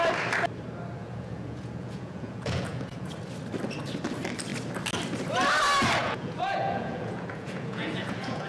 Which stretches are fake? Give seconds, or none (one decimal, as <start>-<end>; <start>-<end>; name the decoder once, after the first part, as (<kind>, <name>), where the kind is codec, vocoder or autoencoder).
1.0-3.1 (vocoder, Vocos); 6.0-8.5